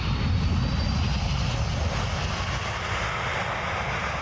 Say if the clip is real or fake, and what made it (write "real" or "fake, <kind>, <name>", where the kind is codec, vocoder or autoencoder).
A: real